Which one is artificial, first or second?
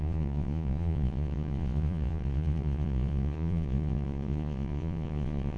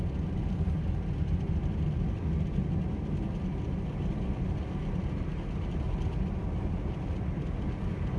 first